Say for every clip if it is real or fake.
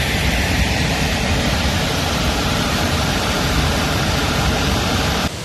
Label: fake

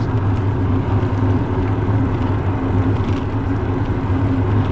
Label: real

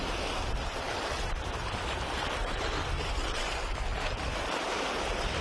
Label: fake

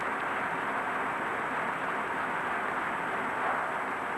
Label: real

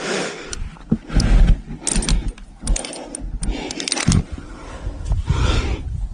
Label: real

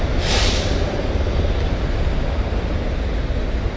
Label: real